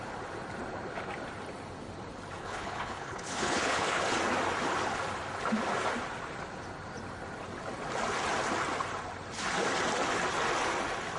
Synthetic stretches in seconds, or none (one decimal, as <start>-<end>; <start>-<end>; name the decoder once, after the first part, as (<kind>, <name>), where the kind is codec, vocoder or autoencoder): 2.4-4.0 (codec, HILCodec)